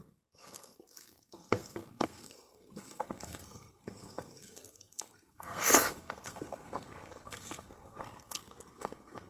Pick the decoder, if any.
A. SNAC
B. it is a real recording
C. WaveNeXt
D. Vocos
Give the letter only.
A